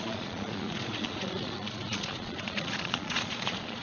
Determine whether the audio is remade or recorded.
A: remade